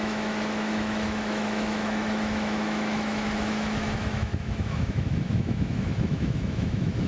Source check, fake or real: fake